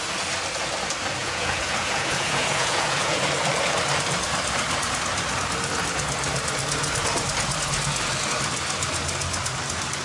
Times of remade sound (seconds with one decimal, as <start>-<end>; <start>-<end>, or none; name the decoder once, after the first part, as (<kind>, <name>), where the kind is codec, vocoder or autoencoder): 1.2-3.2 (vocoder, Vocos)